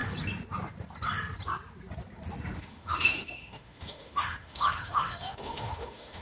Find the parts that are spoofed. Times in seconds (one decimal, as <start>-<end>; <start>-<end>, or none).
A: 2.6-6.2